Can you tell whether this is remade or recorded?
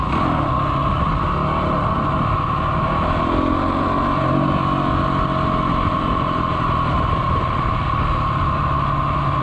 recorded